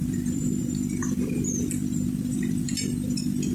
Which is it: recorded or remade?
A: remade